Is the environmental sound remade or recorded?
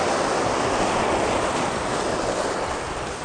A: remade